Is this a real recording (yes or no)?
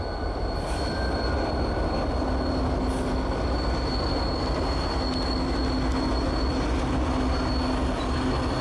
yes